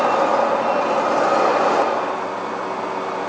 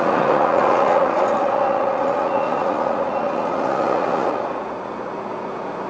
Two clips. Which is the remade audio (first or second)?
second